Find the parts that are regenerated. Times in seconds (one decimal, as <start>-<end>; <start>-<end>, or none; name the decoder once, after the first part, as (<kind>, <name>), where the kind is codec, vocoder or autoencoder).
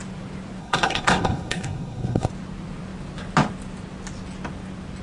0.6-2.3 (codec, SNAC)